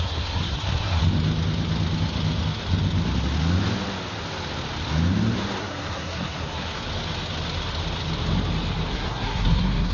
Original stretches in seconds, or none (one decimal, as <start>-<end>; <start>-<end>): 1.0-5.6; 6.8-8.9